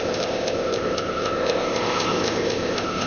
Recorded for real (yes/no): no